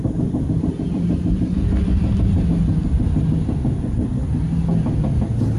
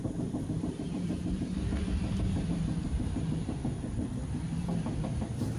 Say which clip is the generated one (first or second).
second